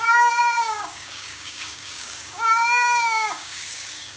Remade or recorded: remade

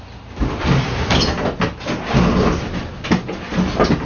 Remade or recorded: recorded